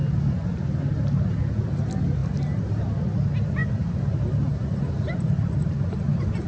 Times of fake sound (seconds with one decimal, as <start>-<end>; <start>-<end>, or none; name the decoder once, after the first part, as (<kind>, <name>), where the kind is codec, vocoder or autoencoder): 2.2-2.8 (vocoder, BigVGAN v2); 3.6-6.5